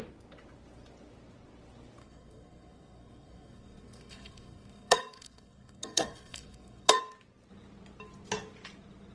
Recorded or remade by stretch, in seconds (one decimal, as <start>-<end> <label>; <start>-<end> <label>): 0.0-2.0 recorded; 2.0-7.0 remade; 7.0-9.1 recorded